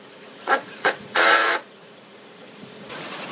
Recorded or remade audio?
remade